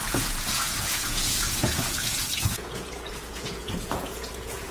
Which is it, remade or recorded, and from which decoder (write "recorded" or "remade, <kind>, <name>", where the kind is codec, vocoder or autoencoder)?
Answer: remade, vocoder, Vocos